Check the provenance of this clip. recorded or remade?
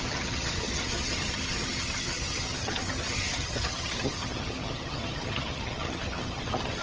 remade